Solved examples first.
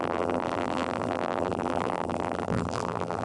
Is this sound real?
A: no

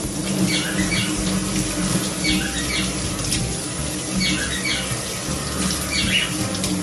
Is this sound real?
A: yes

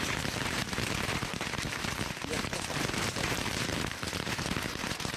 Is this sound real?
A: no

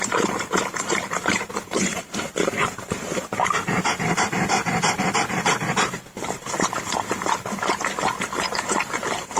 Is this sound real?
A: no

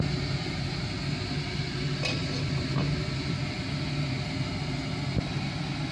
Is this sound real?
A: yes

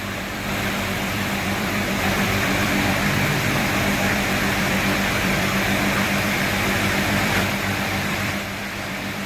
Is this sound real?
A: no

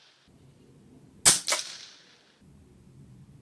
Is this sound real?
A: yes